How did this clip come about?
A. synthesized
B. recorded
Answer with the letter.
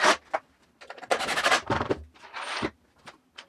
B